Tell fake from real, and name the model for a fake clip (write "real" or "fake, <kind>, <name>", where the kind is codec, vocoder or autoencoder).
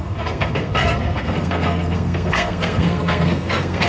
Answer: fake, codec, SNAC